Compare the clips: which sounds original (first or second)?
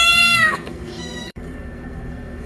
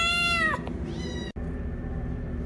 second